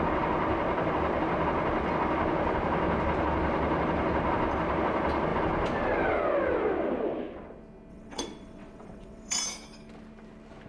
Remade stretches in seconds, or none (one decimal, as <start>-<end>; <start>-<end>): 7.9-9.4